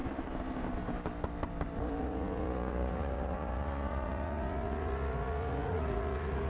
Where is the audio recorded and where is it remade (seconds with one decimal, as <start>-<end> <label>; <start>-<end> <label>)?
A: 0.0-2.0 recorded; 2.0-6.5 remade